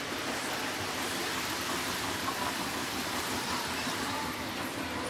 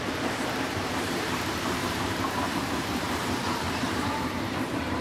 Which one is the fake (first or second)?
second